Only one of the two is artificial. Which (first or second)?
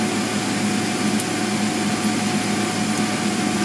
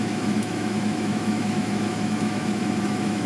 second